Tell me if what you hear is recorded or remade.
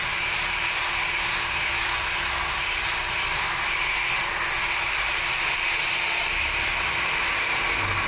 recorded